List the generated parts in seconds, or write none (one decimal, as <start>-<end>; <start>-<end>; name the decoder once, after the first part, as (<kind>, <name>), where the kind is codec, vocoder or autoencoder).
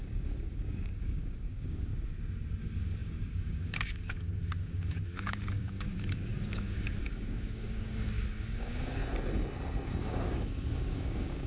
0.0-1.9 (codec, DAC); 2.6-9.0; 10.0-11.5